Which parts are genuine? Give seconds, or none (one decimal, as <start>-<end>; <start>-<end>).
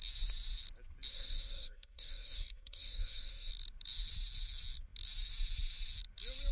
0.0-1.1; 3.5-6.5